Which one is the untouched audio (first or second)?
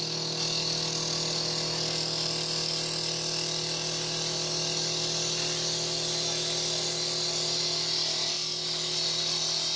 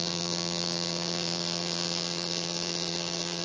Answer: first